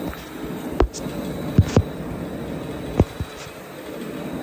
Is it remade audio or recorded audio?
recorded